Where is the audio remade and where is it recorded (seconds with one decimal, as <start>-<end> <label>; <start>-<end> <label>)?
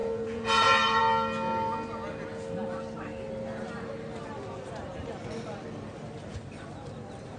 0.0-1.0 remade; 1.0-7.4 recorded